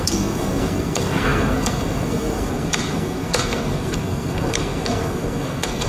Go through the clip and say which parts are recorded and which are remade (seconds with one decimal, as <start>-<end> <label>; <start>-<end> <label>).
0.0-5.9 remade